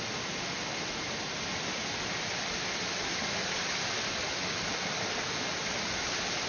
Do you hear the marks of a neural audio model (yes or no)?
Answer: no